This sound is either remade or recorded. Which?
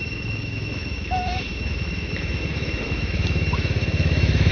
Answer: remade